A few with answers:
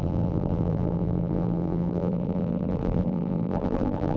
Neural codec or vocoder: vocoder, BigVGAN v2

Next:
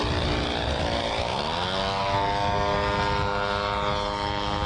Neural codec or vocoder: none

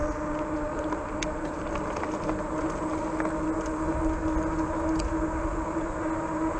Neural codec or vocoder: none